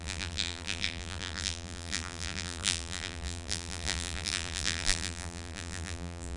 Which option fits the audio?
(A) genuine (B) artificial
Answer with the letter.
B